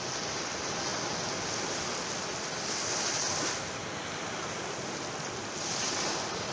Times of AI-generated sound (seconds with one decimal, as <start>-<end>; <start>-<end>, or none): none